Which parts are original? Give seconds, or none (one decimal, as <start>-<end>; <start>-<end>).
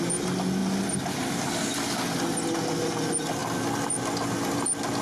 0.0-5.0